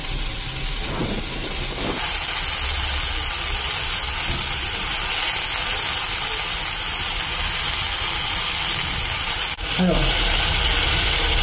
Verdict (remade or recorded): recorded